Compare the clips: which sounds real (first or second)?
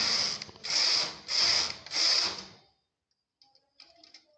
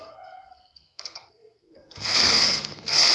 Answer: first